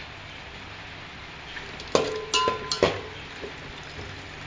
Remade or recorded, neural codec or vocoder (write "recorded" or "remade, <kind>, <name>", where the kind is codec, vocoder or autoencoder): recorded